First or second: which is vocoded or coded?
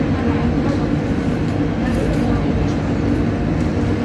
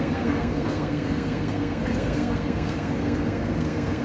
second